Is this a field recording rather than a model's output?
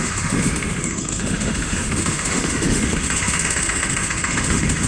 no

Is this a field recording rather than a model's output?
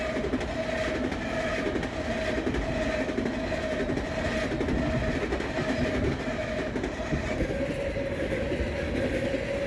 yes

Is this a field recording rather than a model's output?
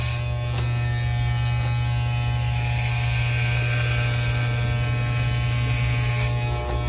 yes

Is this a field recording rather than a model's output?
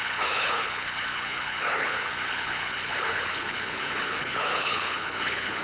no